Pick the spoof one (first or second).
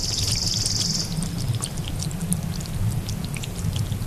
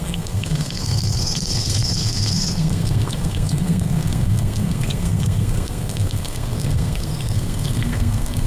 second